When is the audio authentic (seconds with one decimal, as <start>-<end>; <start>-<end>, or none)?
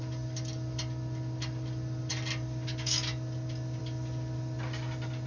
0.0-5.3